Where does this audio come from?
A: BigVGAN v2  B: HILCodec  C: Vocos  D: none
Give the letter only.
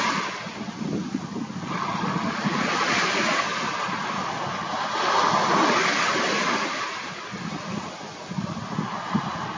D